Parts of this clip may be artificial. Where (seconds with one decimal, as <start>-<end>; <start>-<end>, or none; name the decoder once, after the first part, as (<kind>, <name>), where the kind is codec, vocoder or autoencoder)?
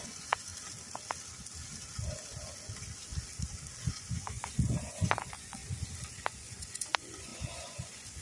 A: 0.0-0.5 (vocoder, Vocos); 3.9-5.6; 6.1-8.2